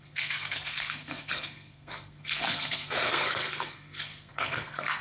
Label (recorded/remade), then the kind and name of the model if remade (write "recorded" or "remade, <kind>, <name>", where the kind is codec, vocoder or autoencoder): remade, codec, SNAC